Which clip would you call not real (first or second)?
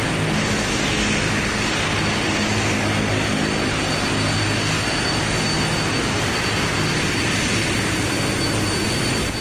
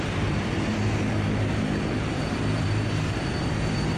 second